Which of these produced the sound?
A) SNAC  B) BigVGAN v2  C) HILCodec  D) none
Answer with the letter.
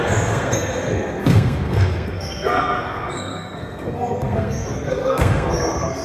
A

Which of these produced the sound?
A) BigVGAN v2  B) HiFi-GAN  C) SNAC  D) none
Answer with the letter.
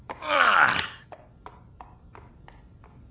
A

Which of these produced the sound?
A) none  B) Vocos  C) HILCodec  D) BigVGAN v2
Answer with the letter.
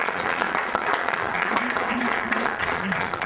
B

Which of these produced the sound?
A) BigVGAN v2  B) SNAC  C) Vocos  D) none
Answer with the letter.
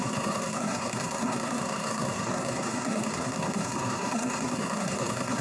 B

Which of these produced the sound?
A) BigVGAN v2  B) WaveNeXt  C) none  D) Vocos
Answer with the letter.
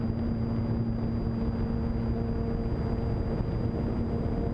C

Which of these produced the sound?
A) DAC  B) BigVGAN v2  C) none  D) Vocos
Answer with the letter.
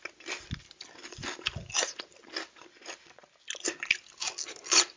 C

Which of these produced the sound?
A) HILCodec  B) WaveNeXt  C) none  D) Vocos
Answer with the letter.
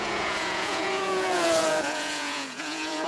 D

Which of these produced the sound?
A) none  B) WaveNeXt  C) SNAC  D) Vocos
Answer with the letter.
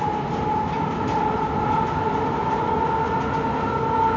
A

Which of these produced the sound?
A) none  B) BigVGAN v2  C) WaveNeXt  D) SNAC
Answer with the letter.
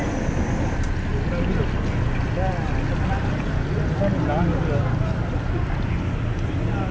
A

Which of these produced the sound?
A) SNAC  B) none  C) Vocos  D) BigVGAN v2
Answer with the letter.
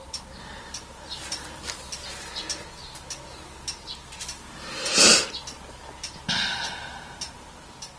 B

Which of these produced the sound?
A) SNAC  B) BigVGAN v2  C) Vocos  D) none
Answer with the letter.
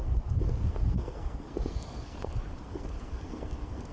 A